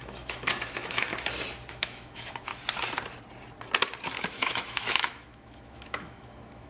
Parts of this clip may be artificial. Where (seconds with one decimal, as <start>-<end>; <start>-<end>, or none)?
0.0-1.1; 1.7-2.5; 4.3-6.7